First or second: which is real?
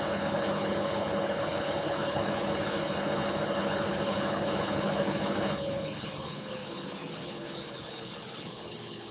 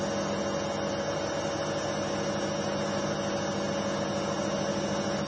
second